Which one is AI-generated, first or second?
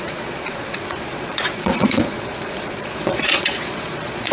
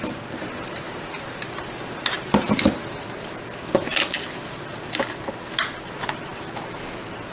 first